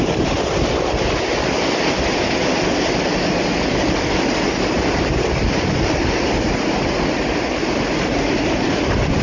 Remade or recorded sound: recorded